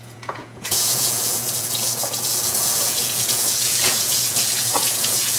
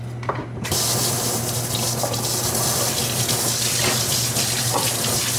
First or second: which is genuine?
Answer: second